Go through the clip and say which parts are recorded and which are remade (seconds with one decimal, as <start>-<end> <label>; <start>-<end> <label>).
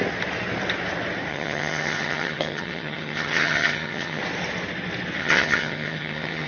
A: 0.0-1.3 recorded; 1.3-4.2 remade; 4.2-5.2 recorded; 5.2-6.5 remade